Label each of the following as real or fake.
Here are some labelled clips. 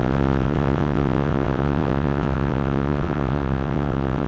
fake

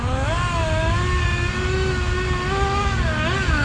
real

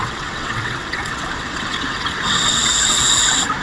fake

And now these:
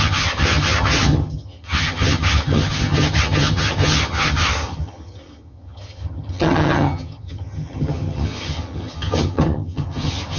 fake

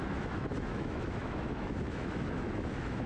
fake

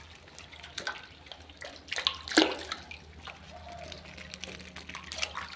real